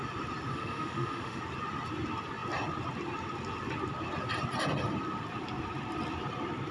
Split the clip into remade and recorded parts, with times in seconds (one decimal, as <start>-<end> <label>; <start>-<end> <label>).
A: 0.0-0.5 recorded; 0.5-1.4 remade; 1.4-6.7 recorded